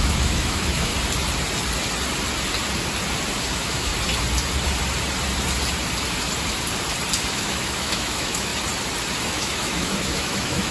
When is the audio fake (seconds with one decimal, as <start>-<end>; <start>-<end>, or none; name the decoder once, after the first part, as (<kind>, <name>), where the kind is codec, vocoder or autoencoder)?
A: 0.0-0.9 (autoencoder, DAC-VAE); 3.5-3.9; 7.3-8.5; 9.3-10.7